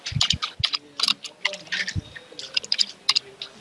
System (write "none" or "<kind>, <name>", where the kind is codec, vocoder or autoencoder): none